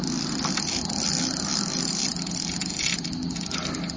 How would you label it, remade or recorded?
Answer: recorded